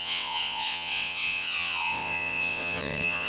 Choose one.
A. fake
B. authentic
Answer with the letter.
A